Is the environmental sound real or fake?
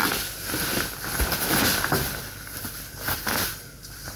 real